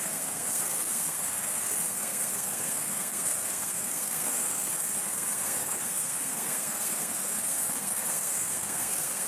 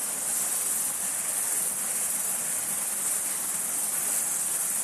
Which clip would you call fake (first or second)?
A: first